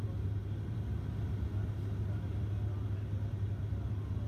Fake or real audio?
real